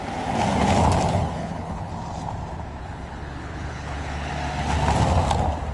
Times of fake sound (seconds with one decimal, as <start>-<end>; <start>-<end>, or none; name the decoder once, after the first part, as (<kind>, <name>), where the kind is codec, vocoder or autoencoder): 1.1-1.9 (codec, HILCodec); 2.8-4.3